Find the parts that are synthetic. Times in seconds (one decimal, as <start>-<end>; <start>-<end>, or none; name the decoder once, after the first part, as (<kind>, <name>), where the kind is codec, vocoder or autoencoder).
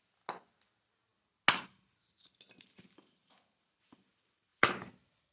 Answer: none